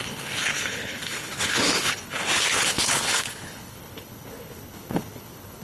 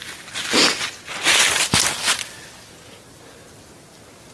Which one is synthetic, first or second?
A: first